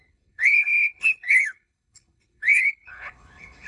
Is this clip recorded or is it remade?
remade